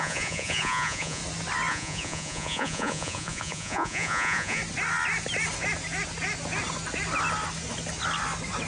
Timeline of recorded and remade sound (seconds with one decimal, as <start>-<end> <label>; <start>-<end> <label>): 0.0-1.2 remade; 1.2-1.7 recorded; 1.7-4.6 remade; 4.6-8.7 recorded